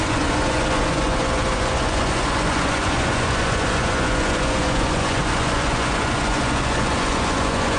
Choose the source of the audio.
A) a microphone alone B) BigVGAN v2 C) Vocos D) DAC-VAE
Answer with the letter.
C